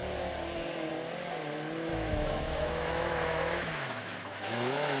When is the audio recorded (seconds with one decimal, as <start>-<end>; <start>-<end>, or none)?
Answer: 0.0-1.9